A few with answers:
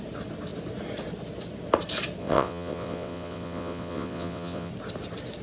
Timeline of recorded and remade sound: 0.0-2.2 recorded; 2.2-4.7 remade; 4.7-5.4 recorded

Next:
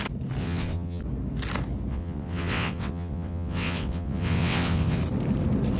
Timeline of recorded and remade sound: 0.0-0.4 recorded; 0.4-1.0 remade; 1.0-1.9 recorded; 1.9-5.0 remade; 5.0-5.8 recorded

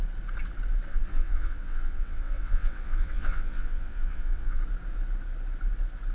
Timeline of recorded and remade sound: 0.0-0.9 recorded; 0.9-4.6 remade; 4.6-6.1 recorded